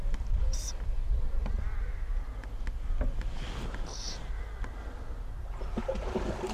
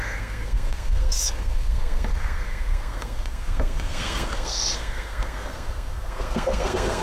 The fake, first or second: second